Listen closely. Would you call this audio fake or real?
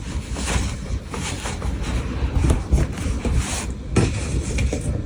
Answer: real